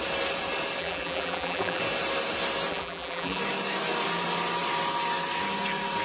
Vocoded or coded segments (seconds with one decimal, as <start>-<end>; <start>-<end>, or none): 0.8-1.8; 2.7-3.4